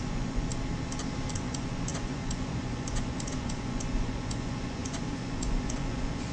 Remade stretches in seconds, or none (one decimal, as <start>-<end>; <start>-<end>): 0.0-0.5; 1.3-6.3